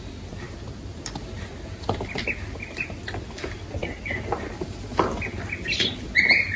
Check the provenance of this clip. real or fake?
real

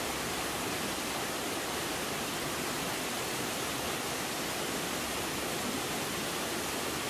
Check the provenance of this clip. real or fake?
real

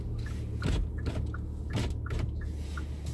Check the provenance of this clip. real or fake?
real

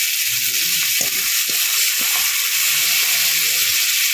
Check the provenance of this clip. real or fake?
real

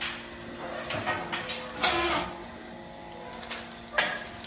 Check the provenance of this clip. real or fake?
real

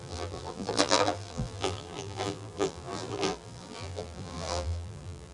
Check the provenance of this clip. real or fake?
fake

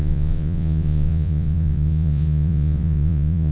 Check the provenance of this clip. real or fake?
fake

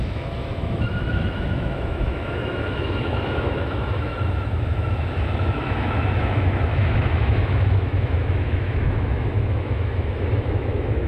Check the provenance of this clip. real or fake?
fake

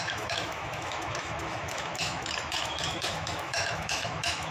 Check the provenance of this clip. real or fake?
fake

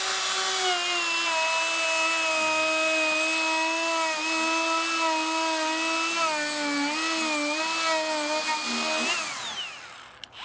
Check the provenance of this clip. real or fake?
real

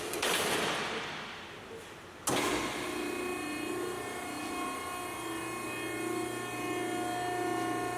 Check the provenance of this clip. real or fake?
real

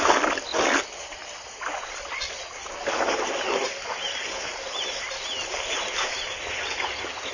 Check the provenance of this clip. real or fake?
real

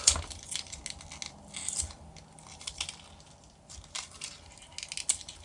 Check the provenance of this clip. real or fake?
real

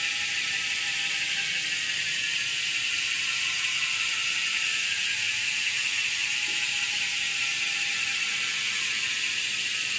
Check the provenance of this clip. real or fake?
fake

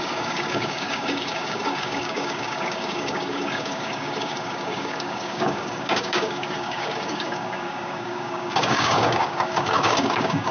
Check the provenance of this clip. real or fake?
fake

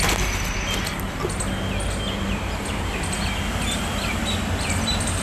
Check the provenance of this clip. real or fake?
real